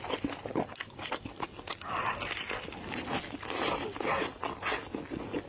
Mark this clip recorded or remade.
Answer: recorded